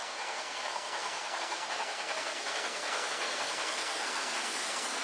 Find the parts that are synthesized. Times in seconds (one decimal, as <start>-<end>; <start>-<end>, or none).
0.0-5.0